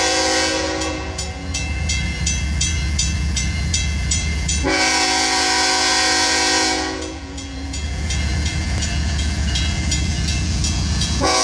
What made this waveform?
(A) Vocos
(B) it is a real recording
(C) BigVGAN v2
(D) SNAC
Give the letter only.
A